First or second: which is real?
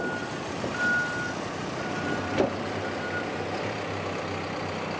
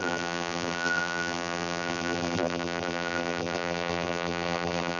first